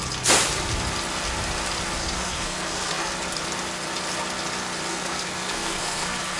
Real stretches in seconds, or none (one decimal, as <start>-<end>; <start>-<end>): 0.0-2.0; 3.1-4.9